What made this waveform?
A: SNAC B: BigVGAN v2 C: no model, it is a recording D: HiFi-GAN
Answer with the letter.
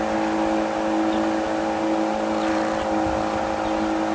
C